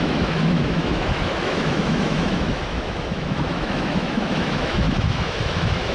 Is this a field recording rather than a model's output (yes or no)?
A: no